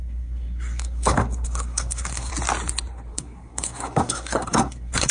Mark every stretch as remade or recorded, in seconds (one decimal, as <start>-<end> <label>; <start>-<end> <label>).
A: 0.0-2.3 remade; 2.3-3.1 recorded; 3.1-5.1 remade